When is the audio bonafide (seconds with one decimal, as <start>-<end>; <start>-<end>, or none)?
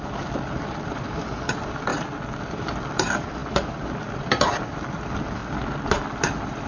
1.9-2.4; 5.4-6.2